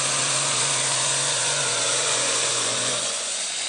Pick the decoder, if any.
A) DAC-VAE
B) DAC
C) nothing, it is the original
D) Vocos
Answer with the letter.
D